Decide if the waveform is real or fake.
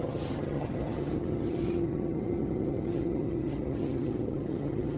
fake